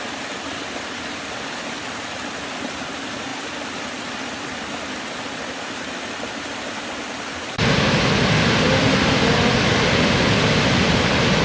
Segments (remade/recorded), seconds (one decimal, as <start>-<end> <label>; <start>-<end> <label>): 0.0-11.4 recorded